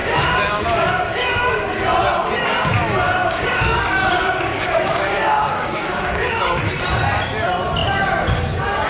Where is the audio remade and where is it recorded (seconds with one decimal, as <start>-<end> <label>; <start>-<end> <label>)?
0.0-0.9 remade; 0.9-3.2 recorded; 3.2-6.4 remade; 6.4-8.9 recorded